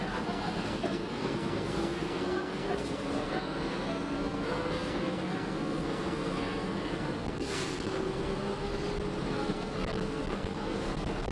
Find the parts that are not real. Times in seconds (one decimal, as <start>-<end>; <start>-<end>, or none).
0.0-8.7; 9.3-11.3